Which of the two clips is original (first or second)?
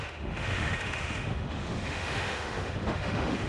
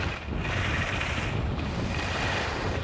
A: second